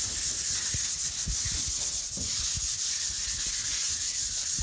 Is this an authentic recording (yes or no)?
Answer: yes